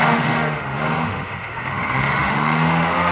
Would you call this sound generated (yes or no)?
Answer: yes